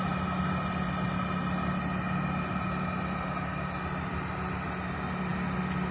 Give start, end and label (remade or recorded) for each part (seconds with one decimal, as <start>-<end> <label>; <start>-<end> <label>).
0.0-5.9 recorded